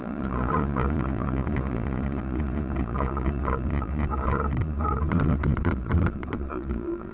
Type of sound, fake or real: fake